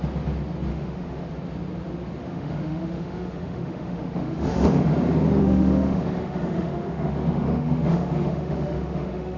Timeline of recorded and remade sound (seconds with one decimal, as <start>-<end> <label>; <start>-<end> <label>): 0.0-0.7 recorded; 0.7-1.3 remade; 1.3-2.2 recorded; 2.2-4.9 remade; 4.9-5.4 recorded; 5.4-9.4 remade